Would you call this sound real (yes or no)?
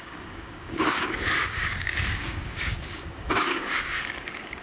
no